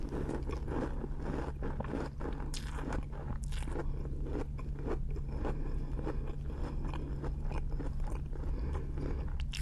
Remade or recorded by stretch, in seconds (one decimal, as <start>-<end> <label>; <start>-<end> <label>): 0.0-9.6 recorded